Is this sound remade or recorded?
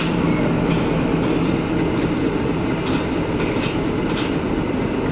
recorded